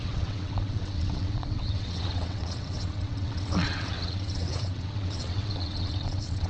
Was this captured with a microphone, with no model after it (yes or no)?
no